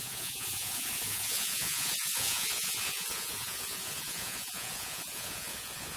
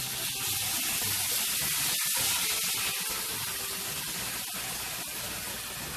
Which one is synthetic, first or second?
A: first